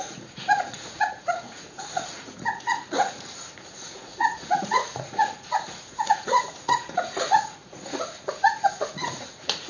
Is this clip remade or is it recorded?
remade